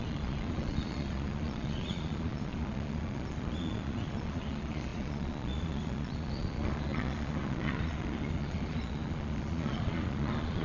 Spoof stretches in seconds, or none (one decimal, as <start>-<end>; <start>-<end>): 0.0-10.6